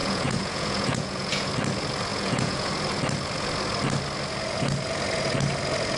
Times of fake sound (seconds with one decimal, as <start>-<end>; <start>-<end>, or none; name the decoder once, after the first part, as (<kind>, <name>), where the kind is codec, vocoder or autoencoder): 0.0-1.5 (vocoder, Vocos); 2.1-2.7